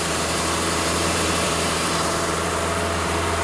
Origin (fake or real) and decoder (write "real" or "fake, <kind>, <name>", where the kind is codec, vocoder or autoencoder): fake, vocoder, BigVGAN v2